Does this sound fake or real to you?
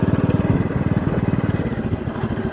real